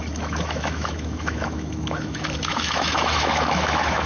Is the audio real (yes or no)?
no